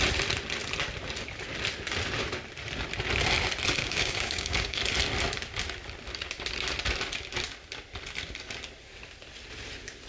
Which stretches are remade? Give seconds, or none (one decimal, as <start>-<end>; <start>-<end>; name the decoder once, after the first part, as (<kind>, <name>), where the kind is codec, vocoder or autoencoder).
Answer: 3.8-4.8 (codec, DAC)